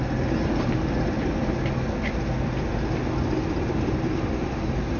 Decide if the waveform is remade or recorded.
recorded